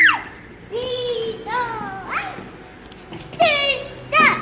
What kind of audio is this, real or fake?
real